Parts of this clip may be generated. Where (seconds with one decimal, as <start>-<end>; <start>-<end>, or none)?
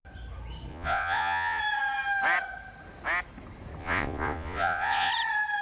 0.7-1.6; 3.8-5.1